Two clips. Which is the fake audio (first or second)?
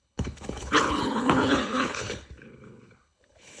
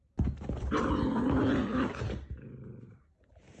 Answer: first